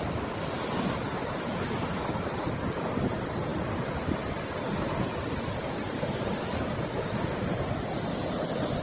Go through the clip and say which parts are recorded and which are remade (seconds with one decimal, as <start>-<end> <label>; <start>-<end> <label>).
0.0-8.8 recorded